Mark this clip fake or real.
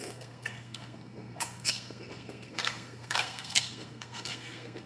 fake